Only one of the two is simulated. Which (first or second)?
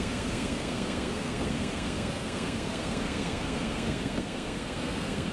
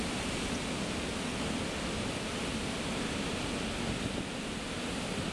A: first